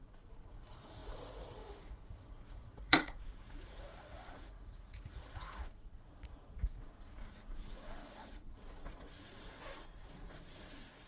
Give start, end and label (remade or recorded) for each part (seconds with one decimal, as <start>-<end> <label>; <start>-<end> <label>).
0.0-11.1 remade